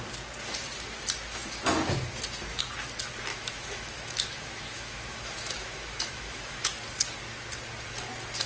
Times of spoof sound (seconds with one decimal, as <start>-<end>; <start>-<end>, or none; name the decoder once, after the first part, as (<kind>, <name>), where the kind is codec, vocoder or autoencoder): 3.3-6.8 (autoencoder, DAC-VAE)